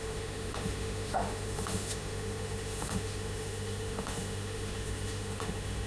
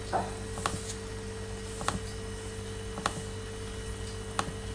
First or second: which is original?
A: second